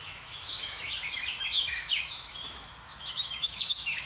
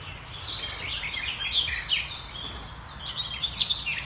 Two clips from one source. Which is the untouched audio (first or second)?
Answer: second